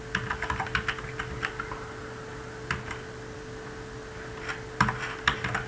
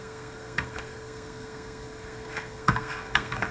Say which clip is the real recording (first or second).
first